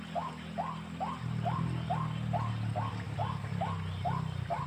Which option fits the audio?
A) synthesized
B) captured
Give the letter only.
B